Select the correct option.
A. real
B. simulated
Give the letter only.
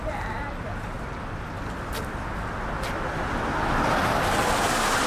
B